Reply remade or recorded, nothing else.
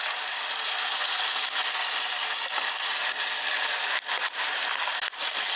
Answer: recorded